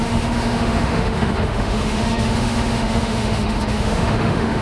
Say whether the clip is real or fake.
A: fake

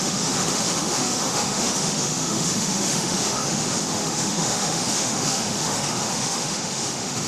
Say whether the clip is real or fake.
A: fake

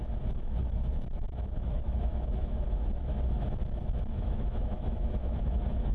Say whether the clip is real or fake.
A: fake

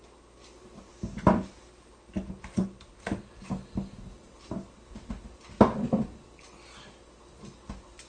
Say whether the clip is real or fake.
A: real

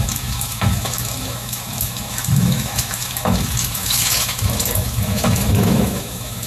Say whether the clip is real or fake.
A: fake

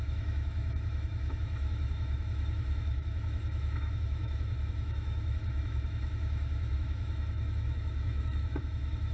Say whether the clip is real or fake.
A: fake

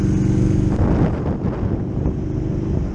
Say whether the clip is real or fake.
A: real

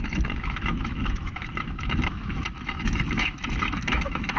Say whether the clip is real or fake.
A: fake